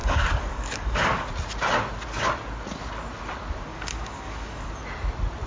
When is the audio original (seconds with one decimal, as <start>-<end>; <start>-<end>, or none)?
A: 1.3-3.7; 4.7-5.5